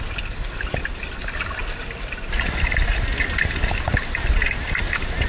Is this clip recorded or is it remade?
recorded